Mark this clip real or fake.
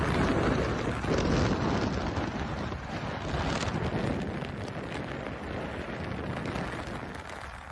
real